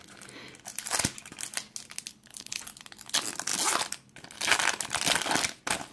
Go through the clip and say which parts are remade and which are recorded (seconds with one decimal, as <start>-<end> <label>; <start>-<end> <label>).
0.0-2.1 recorded; 2.1-2.6 remade; 2.6-5.9 recorded